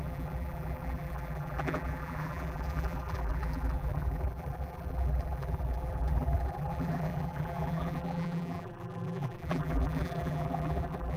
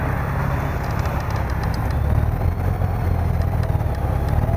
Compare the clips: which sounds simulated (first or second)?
first